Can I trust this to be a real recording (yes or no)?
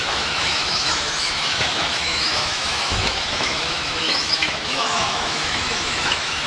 no